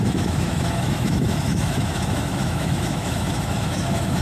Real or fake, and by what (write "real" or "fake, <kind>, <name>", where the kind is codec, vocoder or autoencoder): fake, autoencoder, DAC-VAE